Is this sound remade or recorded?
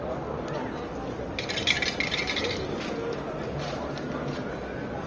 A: recorded